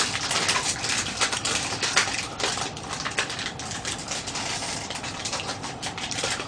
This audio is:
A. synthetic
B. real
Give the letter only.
A